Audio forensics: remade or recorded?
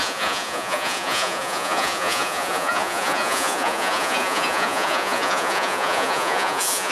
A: remade